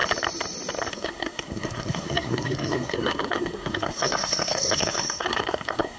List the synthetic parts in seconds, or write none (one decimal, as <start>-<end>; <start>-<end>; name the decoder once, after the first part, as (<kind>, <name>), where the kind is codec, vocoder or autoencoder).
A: 0.9-6.0 (codec, SNAC)